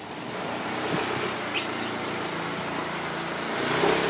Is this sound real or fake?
real